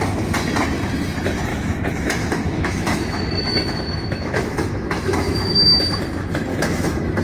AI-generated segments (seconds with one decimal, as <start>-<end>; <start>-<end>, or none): 1.5-5.8; 6.5-7.2